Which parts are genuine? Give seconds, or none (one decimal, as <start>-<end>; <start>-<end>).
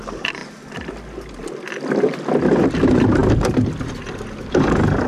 0.0-5.1